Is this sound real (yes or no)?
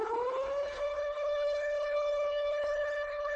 no